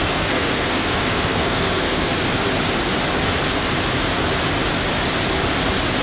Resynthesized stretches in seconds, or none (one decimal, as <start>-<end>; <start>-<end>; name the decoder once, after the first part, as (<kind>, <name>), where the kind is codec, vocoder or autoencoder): 0.0-2.1 (codec, SNAC)